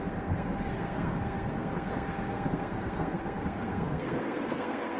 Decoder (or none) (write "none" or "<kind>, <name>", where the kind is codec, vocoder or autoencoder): codec, SNAC